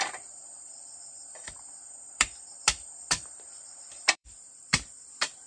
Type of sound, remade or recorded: remade